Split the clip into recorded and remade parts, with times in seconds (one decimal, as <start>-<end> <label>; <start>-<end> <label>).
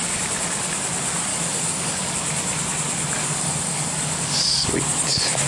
0.0-1.3 recorded; 1.3-2.1 remade; 2.1-3.2 recorded; 3.2-4.8 remade; 4.8-5.5 recorded